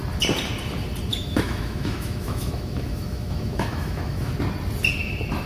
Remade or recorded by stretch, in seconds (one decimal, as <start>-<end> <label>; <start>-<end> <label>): 0.0-1.1 recorded; 1.1-4.3 remade; 4.3-5.5 recorded